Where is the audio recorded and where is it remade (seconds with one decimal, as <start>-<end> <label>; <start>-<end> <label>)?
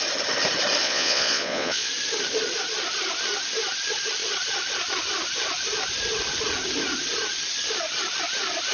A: 0.0-0.8 recorded; 0.8-1.9 remade; 1.9-8.7 recorded